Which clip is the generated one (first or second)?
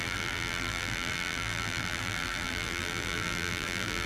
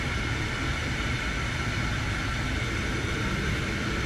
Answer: first